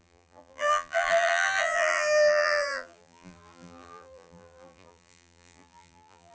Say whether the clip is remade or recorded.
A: remade